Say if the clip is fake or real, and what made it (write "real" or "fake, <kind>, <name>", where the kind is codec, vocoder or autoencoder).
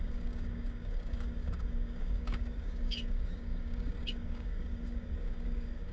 fake, codec, DAC